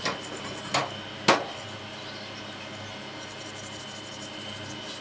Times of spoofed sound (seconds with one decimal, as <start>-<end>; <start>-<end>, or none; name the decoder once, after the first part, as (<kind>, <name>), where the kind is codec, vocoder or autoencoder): none